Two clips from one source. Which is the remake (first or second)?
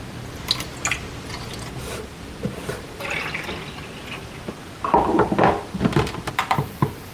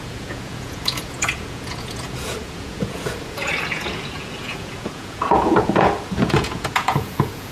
second